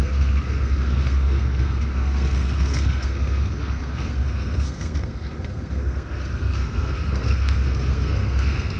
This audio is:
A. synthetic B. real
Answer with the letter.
A